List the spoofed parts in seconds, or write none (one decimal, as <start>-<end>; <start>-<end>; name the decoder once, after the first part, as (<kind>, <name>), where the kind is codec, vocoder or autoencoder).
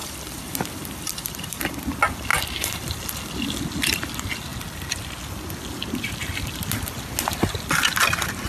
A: 0.0-1.7 (vocoder, BigVGAN v2); 2.3-3.0